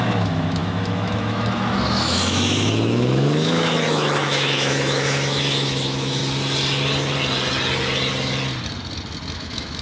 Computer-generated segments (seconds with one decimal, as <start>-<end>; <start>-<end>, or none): 0.0-6.2; 9.3-9.8